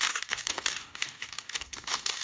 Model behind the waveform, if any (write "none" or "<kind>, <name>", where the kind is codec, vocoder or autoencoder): codec, DAC